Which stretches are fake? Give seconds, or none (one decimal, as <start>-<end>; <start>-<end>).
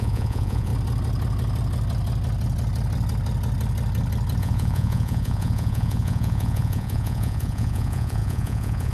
0.0-0.7; 4.4-8.9